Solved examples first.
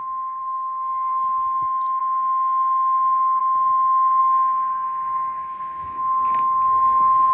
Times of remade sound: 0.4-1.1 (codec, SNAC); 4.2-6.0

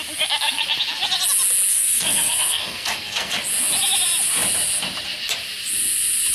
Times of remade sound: 1.7-3.4 (codec, SNAC)